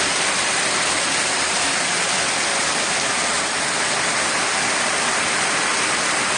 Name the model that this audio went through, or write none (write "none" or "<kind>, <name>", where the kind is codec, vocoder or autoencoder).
none